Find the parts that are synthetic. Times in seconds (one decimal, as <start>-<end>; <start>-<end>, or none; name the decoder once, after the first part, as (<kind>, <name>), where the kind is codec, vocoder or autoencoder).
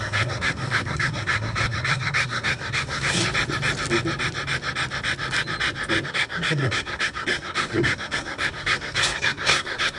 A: 0.0-3.2 (codec, SNAC); 6.1-10.0